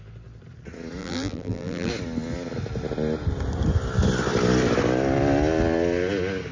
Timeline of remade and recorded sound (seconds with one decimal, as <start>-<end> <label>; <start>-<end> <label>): 0.0-1.0 recorded; 1.0-1.9 remade; 1.9-6.5 recorded